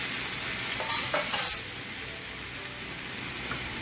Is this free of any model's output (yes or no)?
yes